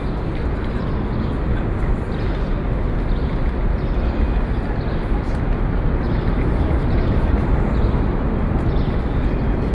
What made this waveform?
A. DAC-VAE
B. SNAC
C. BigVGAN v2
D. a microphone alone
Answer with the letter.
D